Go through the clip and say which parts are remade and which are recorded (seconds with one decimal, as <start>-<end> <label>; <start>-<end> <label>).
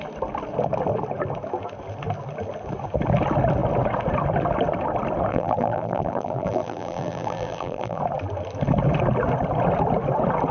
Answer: 0.0-5.3 recorded; 5.3-8.0 remade; 8.0-10.5 recorded